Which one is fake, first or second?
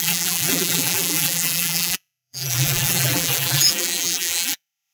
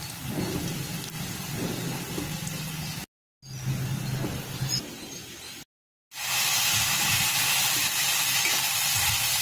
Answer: first